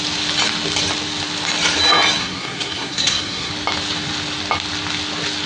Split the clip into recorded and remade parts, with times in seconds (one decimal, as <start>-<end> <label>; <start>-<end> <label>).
0.0-2.2 recorded; 2.2-3.5 remade; 3.5-5.5 recorded